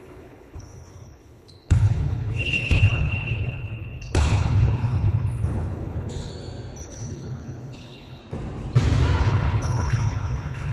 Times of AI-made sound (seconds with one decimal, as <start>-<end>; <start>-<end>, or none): 0.0-6.3; 6.8-8.2; 9.2-10.7